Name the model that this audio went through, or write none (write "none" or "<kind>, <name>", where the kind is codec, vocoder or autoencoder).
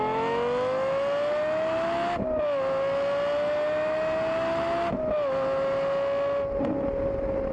none